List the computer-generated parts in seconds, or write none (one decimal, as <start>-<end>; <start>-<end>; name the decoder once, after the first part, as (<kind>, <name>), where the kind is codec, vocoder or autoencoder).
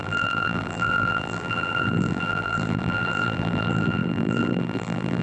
0.0-5.2 (vocoder, BigVGAN v2)